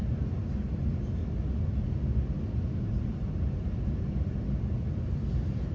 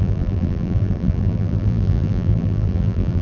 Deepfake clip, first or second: second